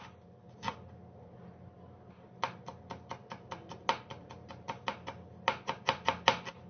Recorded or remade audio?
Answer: recorded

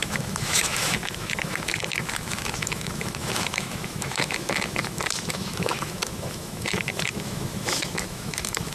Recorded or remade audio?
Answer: remade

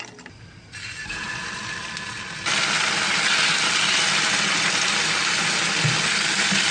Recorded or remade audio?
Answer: recorded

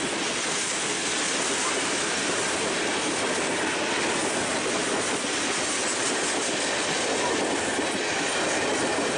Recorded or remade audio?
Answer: recorded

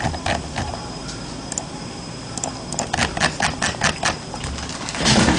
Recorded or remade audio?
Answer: recorded